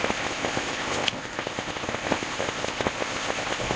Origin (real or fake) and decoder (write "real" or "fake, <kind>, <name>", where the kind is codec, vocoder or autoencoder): fake, codec, ZipCodec